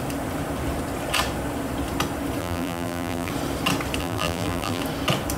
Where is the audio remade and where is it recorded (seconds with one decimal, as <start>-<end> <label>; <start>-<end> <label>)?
0.0-2.4 recorded; 2.4-3.3 remade; 3.3-4.0 recorded; 4.0-4.8 remade; 4.8-5.4 recorded